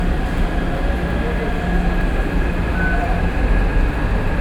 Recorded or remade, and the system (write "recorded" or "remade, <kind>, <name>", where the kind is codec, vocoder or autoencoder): recorded